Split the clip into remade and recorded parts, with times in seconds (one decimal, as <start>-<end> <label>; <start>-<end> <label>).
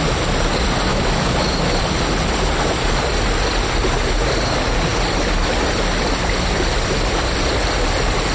0.0-0.9 recorded; 0.9-1.8 remade; 1.8-8.3 recorded